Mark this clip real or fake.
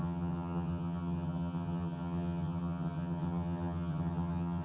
fake